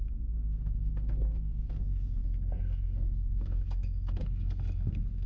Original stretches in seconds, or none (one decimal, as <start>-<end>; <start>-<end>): none